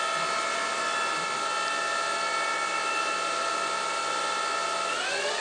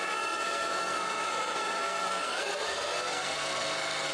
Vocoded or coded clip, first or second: second